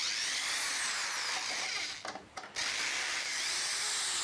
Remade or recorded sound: recorded